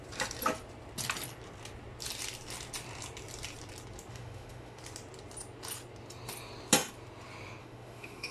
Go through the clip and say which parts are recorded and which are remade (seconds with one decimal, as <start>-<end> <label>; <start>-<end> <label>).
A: 0.0-4.1 recorded; 4.1-4.8 remade; 4.8-7.6 recorded; 7.6-8.3 remade